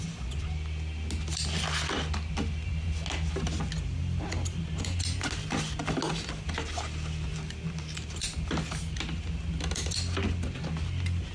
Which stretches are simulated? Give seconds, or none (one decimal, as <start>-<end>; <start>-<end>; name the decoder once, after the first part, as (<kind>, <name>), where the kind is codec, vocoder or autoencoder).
none